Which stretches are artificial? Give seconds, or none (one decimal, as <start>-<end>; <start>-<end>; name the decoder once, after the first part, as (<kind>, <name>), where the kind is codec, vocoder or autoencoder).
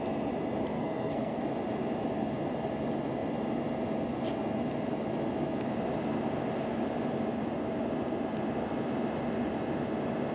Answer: 0.6-1.4 (codec, SNAC)